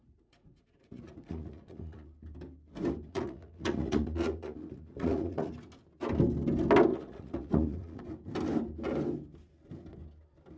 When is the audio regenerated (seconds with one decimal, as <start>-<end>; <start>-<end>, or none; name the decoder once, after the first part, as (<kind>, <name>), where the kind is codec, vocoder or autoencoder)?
0.0-2.1 (vocoder, Vocos); 3.1-5.5; 6.9-8.0